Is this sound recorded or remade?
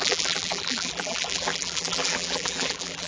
remade